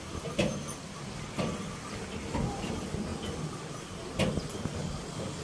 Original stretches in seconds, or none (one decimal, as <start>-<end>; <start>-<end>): 0.0-5.4